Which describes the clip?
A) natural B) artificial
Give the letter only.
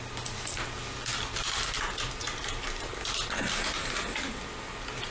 A